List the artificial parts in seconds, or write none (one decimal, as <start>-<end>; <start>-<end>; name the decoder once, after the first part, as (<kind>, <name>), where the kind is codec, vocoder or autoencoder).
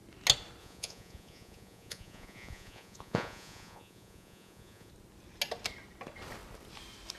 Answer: 0.6-4.9 (vocoder, Vocos)